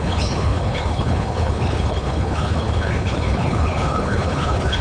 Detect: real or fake fake